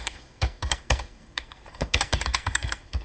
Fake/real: fake